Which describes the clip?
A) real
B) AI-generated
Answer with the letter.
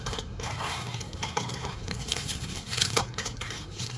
B